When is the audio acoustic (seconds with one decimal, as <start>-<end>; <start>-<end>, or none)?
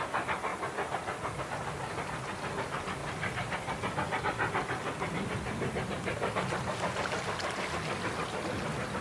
0.0-9.0